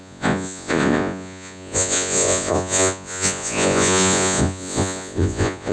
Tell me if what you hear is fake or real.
fake